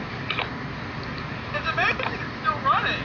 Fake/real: real